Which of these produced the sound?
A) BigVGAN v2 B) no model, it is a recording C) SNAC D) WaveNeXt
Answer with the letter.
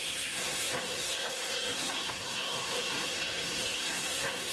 C